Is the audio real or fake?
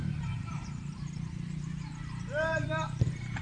fake